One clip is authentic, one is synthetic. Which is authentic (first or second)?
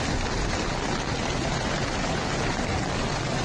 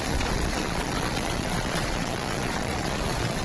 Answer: first